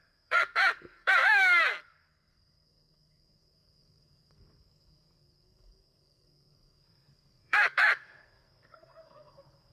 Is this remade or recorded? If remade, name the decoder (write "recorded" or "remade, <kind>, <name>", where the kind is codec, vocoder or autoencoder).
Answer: remade, codec, SNAC